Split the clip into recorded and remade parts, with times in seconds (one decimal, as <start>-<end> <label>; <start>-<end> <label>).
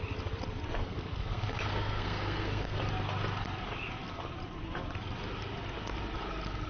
0.0-0.8 recorded; 0.8-2.9 remade; 2.9-6.7 recorded